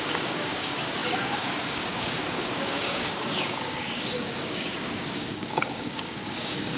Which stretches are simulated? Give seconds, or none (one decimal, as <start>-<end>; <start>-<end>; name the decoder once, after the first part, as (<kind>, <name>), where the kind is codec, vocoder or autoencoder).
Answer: 0.0-6.8 (codec, DAC)